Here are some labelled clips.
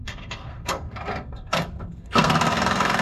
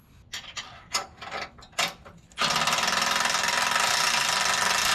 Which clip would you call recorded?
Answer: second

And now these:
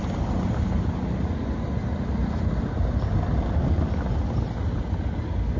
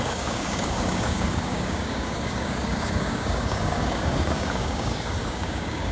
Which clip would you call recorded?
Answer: first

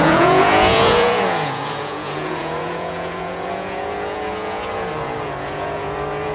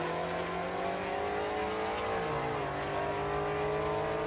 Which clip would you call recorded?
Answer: second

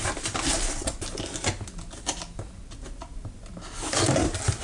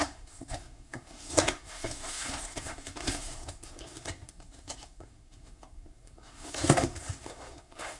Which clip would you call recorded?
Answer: first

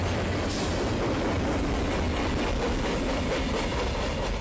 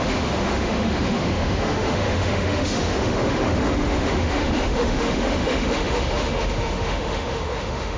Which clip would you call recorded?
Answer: first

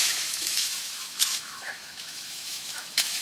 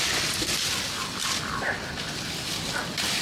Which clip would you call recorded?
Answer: second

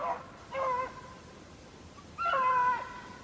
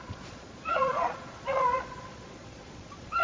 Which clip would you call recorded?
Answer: first